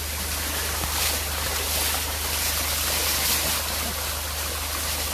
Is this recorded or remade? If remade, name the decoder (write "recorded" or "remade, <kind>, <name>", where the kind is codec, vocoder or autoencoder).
recorded